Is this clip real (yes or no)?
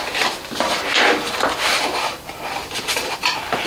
no